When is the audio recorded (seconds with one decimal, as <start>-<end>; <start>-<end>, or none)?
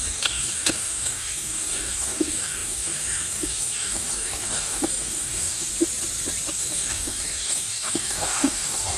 5.7-6.5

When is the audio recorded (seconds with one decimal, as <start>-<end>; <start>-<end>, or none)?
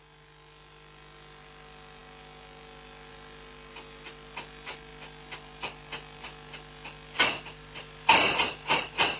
0.0-9.2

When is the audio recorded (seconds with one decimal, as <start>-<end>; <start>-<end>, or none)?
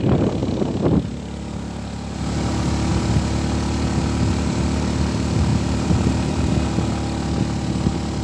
0.0-5.5; 6.4-8.2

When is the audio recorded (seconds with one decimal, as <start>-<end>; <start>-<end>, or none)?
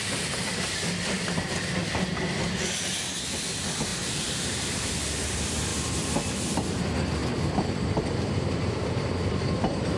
0.0-3.9; 4.9-7.2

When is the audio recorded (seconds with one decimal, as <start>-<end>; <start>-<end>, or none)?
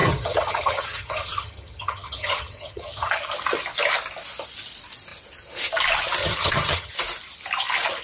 3.1-6.2; 6.9-8.0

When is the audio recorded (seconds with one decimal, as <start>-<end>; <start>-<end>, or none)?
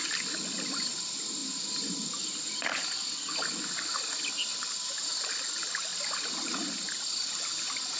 0.0-5.9; 7.3-8.0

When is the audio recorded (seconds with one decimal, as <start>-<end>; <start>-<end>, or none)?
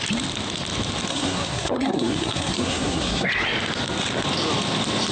0.0-1.1; 3.3-5.1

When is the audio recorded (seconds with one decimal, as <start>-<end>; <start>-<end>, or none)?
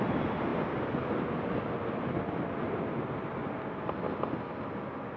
0.0-5.2